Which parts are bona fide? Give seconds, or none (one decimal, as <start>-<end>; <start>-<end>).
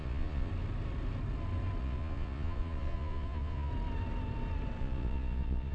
0.5-1.8; 3.7-4.8